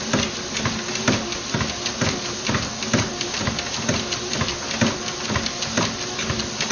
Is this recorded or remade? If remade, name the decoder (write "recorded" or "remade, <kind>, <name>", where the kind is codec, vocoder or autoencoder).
recorded